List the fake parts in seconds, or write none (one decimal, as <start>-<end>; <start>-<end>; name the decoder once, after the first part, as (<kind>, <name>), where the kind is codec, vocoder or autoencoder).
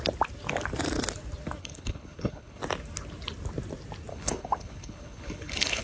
1.6-2.6 (codec, HILCodec); 4.1-5.8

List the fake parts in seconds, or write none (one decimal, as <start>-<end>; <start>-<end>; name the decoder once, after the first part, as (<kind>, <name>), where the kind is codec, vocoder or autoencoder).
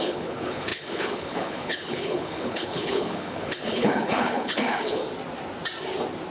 0.0-5.0 (codec, HILCodec)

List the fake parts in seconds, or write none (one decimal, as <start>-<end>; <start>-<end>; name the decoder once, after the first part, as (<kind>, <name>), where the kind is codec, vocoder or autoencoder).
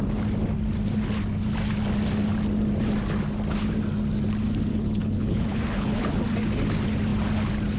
4.7-6.2 (codec, HILCodec)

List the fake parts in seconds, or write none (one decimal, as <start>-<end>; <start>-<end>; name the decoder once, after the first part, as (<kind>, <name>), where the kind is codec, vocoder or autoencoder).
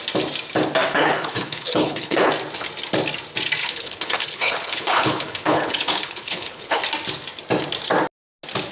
0.9-2.3 (codec, HILCodec); 3.6-6.8